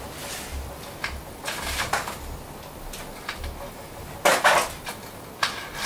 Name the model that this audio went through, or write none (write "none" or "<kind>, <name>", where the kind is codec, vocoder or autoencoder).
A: none